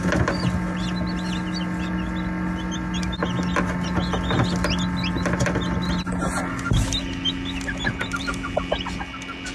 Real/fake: real